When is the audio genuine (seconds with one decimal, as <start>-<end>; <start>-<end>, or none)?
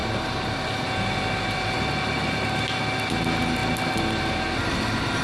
0.0-5.2